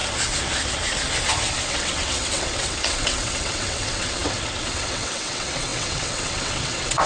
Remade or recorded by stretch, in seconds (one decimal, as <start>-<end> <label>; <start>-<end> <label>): 0.0-1.7 recorded; 1.7-7.1 remade